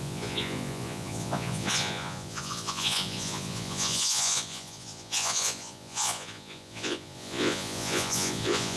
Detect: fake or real fake